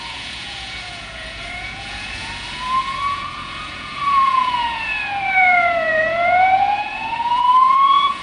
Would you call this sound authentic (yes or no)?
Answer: no